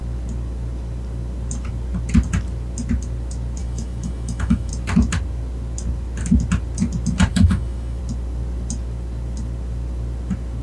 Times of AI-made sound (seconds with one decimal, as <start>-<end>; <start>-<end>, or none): 3.6-4.7; 7.3-8.0